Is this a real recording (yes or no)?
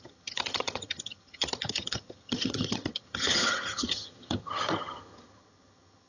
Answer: no